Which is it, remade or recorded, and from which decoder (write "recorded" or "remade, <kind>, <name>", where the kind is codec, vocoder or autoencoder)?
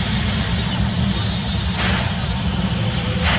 recorded